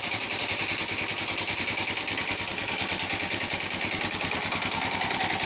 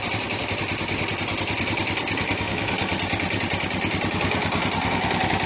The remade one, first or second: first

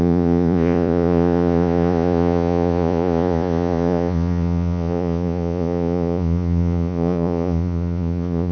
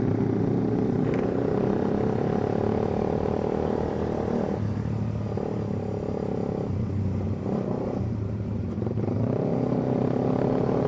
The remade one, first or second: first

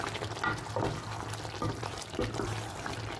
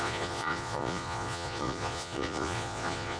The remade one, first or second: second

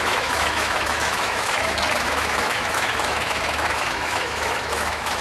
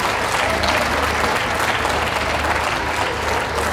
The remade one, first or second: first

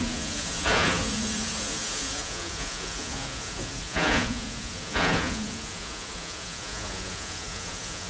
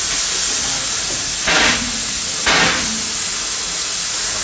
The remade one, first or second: first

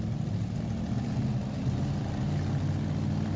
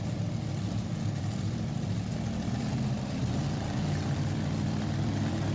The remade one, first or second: second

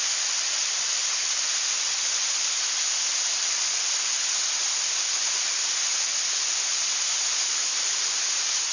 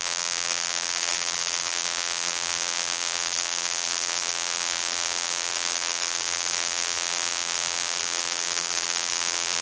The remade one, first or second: second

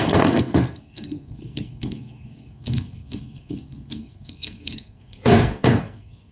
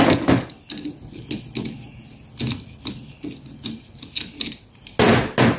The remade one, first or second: first